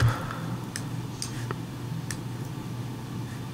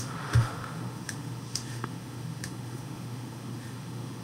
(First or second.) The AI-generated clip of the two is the second